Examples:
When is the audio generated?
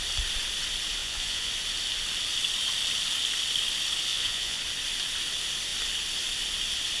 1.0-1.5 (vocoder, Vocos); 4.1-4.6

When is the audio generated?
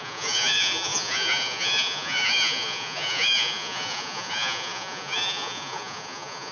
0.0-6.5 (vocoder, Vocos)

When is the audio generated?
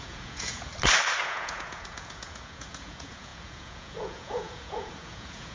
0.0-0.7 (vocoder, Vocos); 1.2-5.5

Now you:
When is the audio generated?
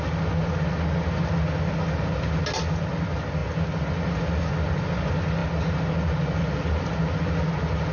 none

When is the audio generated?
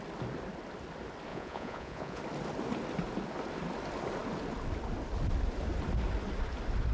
1.3-2.2 (vocoder, Vocos)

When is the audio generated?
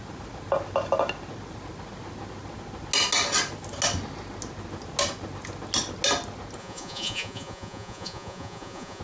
6.6-9.0 (vocoder, Vocos)